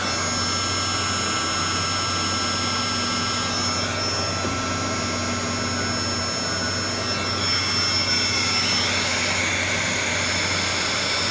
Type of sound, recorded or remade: recorded